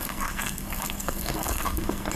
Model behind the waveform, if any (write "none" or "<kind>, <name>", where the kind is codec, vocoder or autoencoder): codec, SNAC